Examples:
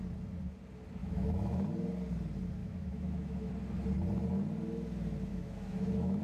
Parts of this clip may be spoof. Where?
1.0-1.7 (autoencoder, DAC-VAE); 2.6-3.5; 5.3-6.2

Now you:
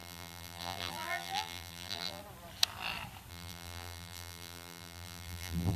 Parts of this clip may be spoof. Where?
0.0-2.2 (vocoder, BigVGAN v2); 3.3-5.8

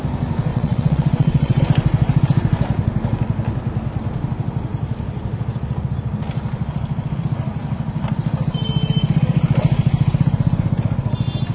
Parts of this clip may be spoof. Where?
0.5-1.6 (vocoder, WaveNeXt)